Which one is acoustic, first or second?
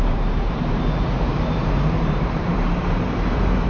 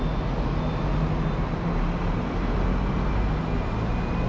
second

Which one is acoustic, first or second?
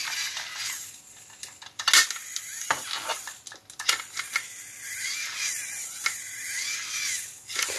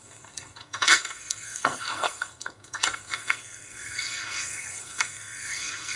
first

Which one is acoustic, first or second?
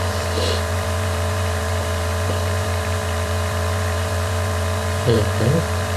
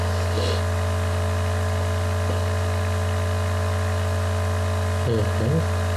second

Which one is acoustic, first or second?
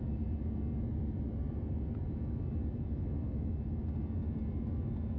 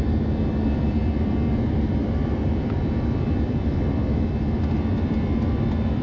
first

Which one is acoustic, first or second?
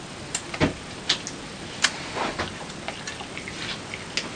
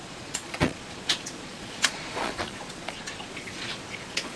first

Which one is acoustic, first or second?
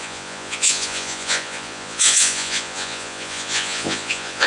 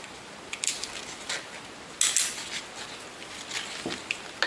second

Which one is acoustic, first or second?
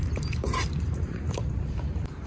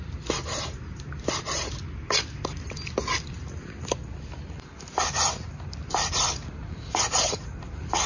second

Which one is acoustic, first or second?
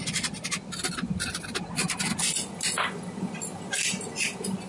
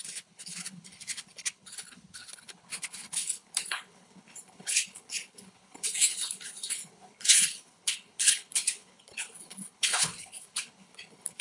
first